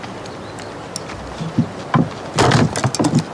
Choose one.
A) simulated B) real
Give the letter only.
B